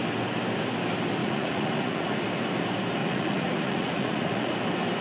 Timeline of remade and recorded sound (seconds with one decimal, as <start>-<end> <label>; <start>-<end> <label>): 0.0-1.2 recorded; 1.2-2.1 remade; 2.1-3.0 recorded; 3.0-4.5 remade; 4.5-5.0 recorded